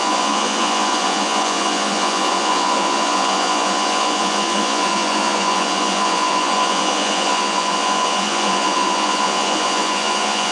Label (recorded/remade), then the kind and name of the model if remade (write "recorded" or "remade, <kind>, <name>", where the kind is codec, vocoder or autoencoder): remade, vocoder, Vocos